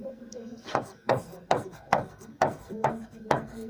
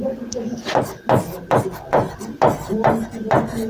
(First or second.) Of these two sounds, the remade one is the first